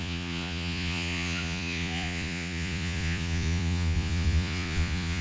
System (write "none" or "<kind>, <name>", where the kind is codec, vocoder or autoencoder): vocoder, Vocos